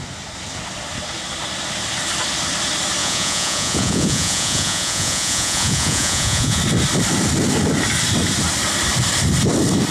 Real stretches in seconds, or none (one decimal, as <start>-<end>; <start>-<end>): 0.0-3.0; 6.6-9.9